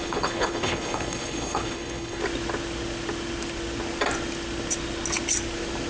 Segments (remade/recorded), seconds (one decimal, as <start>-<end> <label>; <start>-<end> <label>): 0.0-2.2 remade; 2.2-5.9 recorded